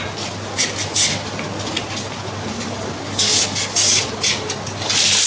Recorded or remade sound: recorded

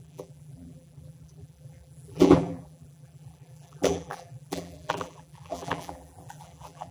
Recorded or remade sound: remade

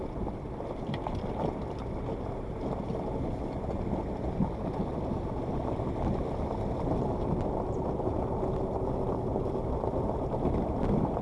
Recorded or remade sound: recorded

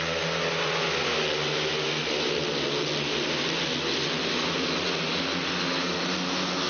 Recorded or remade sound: recorded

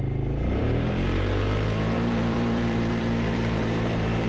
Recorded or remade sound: remade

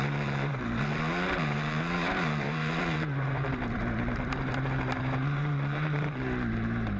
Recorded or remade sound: remade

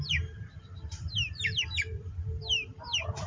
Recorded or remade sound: remade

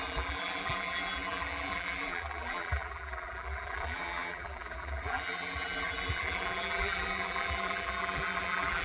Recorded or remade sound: remade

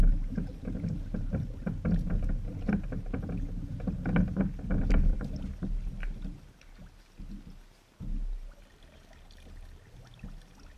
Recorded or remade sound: recorded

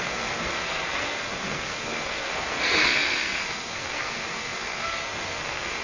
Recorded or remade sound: remade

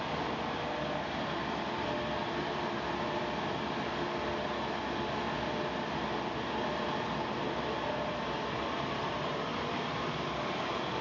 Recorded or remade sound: recorded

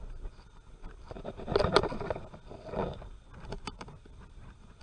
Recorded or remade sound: recorded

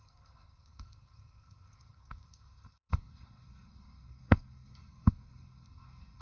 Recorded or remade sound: remade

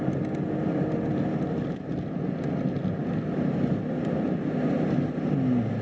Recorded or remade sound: recorded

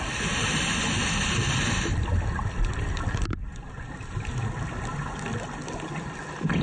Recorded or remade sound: remade